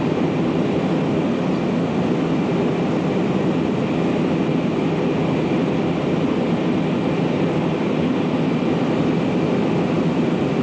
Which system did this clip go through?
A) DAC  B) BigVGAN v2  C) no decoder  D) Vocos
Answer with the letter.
C